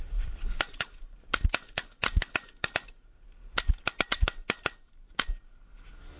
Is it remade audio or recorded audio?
recorded